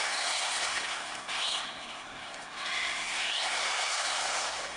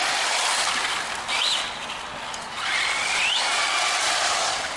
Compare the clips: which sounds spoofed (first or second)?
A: first